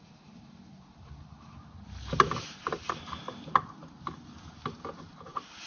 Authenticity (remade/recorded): recorded